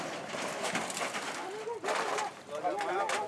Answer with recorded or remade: recorded